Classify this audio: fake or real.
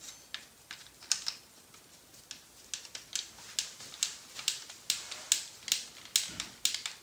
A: real